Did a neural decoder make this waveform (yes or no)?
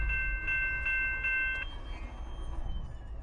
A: no